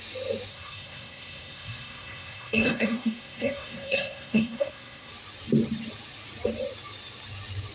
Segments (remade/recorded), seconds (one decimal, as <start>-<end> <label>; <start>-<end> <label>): 0.0-0.5 recorded; 0.5-5.1 remade; 5.1-7.7 recorded